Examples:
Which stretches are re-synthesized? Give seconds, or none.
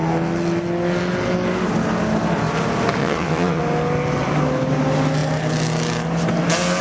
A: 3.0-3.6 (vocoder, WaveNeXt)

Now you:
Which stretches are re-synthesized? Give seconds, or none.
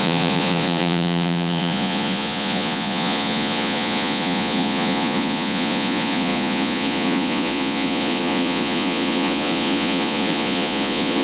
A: 0.0-11.2 (vocoder, Vocos)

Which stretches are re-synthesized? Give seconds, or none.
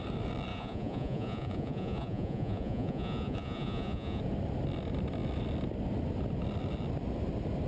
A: 0.5-4.2 (vocoder, Vocos)